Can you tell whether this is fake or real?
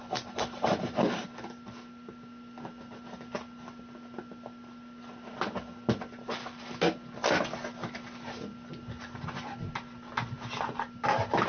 real